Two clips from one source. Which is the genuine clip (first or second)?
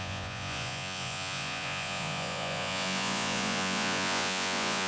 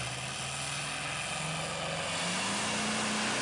second